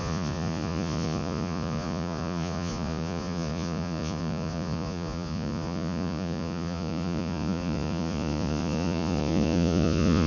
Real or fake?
fake